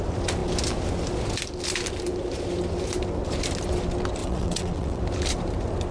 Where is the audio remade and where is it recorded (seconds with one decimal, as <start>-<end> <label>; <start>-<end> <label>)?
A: 0.0-4.2 recorded; 4.2-5.0 remade; 5.0-5.9 recorded